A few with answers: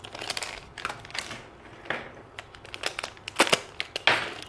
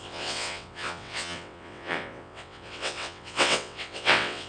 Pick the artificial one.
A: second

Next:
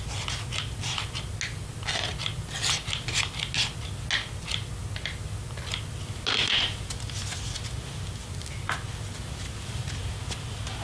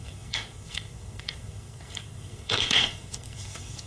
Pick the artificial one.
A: second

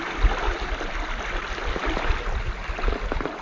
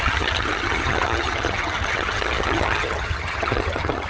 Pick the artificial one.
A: second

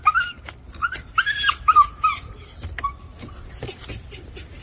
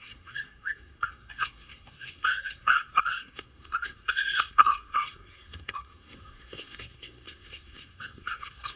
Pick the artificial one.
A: second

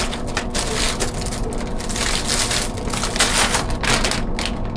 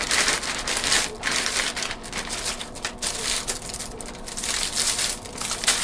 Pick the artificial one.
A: second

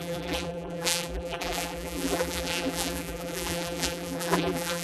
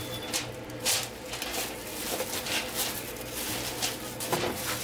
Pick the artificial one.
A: first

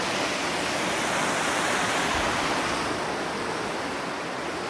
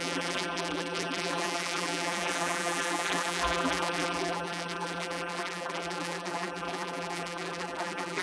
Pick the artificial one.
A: second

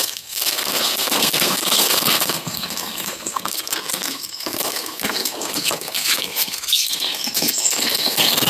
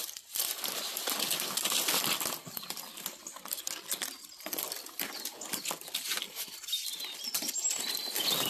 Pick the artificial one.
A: first